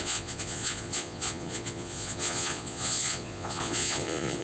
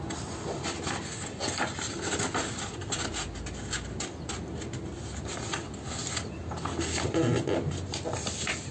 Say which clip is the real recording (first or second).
second